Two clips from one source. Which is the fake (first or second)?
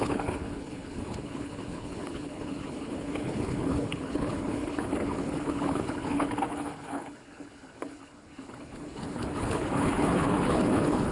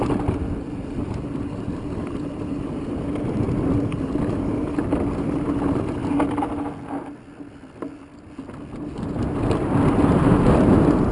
first